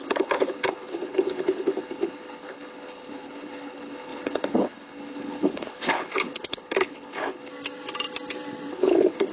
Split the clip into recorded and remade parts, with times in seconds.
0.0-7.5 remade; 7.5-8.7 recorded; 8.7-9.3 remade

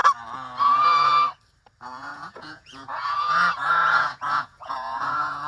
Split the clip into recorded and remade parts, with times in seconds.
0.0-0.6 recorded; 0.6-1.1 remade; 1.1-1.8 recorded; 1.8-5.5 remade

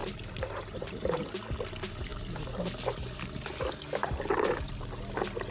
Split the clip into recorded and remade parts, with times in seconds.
0.0-1.2 remade; 1.2-4.0 recorded; 4.0-4.6 remade; 4.6-5.5 recorded

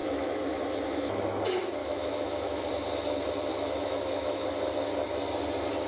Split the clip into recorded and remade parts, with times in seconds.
0.0-1.2 remade; 1.2-1.8 recorded; 1.8-2.7 remade; 2.7-3.5 recorded; 3.5-4.5 remade; 4.5-5.9 recorded